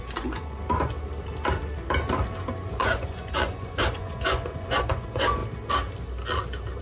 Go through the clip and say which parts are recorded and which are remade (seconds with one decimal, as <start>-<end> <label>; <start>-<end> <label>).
0.0-0.6 remade; 0.6-2.8 recorded; 2.8-5.4 remade; 5.4-6.8 recorded